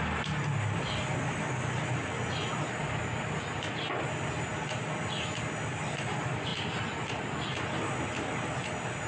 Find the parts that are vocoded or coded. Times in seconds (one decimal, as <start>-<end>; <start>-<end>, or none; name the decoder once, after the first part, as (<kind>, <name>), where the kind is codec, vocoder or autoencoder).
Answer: none